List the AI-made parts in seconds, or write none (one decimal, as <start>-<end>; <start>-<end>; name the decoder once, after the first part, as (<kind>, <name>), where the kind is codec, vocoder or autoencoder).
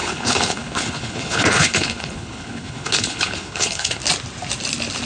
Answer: 0.0-4.0 (codec, HILCodec)